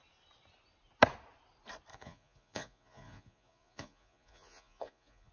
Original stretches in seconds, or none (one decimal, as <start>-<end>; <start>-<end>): 0.0-1.9